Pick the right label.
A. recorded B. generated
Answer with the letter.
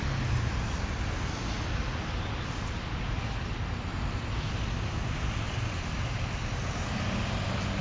A